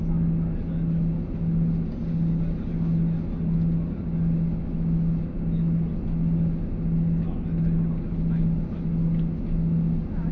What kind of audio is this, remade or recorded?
recorded